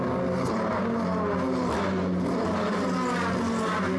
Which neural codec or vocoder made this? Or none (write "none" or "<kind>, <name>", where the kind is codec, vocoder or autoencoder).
none